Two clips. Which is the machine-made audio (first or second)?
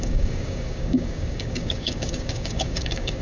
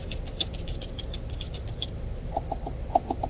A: first